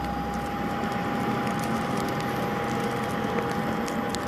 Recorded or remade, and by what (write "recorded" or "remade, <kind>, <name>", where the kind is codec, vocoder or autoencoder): recorded